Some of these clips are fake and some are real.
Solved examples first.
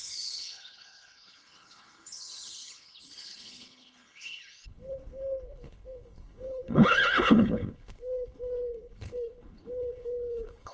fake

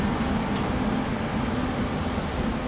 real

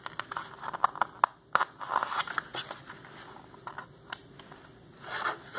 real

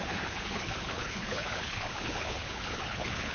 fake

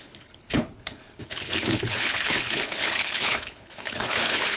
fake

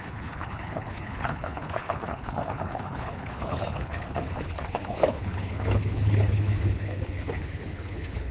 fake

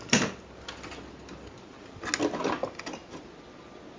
real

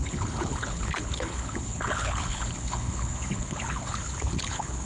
fake